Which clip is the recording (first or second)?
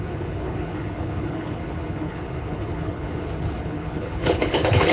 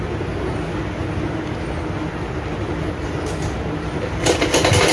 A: second